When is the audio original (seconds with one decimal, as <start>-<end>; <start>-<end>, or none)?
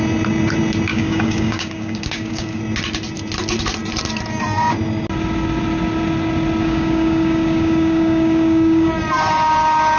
0.0-0.9; 2.6-6.6; 8.9-10.0